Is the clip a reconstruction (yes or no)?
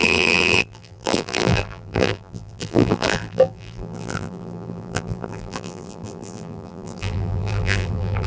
yes